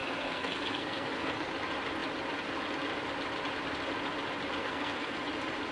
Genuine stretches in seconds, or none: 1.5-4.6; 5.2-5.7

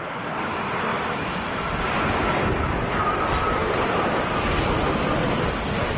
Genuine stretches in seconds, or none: 0.0-6.0